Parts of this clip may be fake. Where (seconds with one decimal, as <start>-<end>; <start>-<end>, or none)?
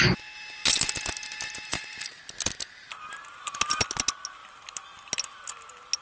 1.7-2.2